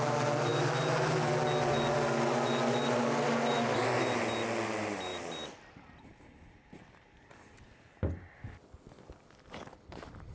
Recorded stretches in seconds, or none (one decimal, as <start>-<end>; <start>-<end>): 0.0-10.3